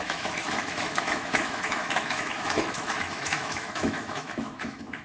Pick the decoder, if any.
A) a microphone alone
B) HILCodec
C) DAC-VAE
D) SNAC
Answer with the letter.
C